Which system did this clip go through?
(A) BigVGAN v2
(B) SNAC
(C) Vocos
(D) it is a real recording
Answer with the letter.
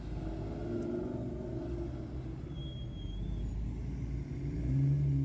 D